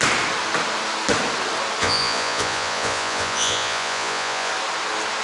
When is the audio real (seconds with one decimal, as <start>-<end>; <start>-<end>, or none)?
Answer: 0.0-1.8; 4.5-5.2